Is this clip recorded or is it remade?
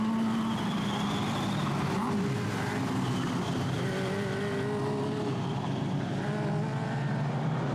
recorded